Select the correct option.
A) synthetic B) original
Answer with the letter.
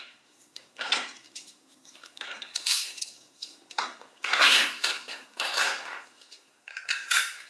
A